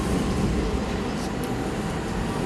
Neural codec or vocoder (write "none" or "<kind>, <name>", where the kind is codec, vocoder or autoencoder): none